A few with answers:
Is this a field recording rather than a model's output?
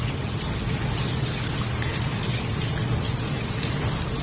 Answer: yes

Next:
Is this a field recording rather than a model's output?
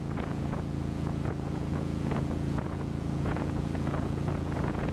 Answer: no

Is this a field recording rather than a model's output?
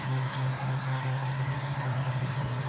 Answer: no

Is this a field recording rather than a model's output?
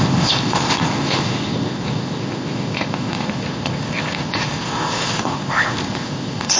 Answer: no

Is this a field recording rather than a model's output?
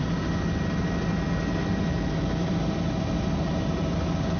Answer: yes